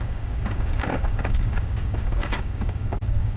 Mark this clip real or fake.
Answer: fake